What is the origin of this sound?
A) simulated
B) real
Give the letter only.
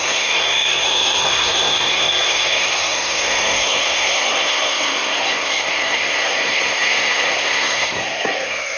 A